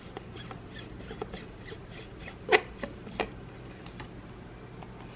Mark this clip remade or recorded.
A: recorded